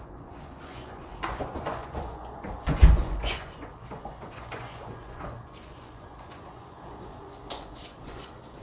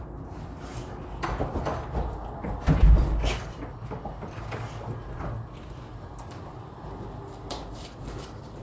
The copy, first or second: first